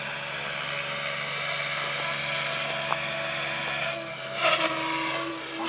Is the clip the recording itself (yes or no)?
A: yes